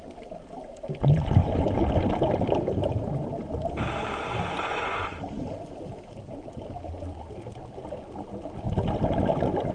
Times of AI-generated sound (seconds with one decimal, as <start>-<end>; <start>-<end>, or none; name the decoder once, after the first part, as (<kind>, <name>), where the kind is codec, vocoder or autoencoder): 1.4-1.9 (vocoder, Vocos); 4.4-5.0